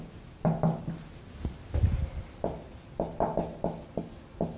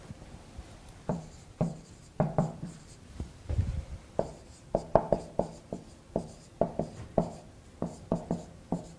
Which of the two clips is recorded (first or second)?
first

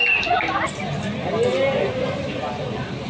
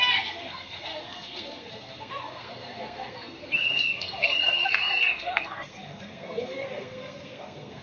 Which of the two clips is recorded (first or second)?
first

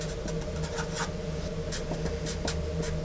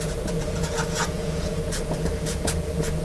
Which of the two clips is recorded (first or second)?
first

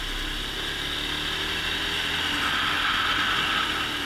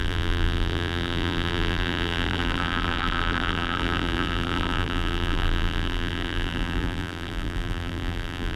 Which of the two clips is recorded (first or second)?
first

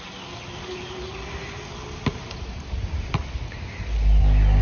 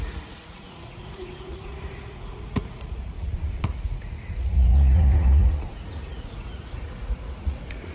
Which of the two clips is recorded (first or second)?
first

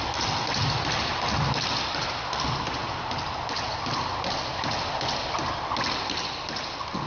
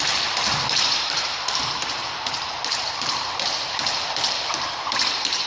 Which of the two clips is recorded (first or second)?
first